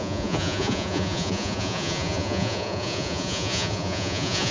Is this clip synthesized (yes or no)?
yes